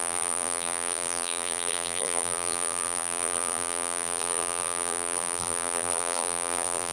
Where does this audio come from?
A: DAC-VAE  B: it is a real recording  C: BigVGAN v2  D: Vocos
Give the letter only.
C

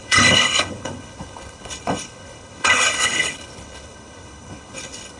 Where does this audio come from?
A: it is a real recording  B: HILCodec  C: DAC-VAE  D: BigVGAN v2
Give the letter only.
B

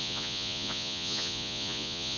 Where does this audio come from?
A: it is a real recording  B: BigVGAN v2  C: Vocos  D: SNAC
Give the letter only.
C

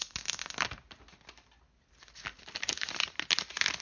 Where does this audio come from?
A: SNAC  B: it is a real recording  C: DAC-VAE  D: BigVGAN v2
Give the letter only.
B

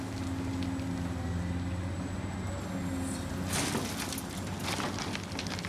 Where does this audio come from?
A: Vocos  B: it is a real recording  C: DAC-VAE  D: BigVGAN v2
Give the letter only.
B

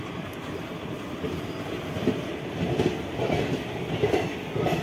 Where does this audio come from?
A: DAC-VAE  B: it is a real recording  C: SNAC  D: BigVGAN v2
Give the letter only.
B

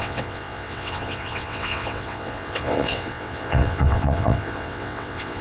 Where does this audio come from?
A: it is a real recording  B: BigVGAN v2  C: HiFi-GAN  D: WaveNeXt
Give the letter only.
D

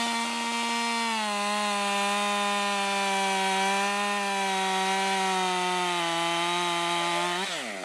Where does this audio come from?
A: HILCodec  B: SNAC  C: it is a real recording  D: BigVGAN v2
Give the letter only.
C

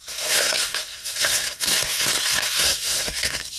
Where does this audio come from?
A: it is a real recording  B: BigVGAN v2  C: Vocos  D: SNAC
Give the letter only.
D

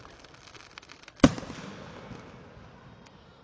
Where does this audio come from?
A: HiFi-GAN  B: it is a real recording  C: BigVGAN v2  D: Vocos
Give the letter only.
B